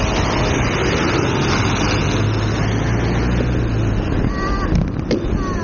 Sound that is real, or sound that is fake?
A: real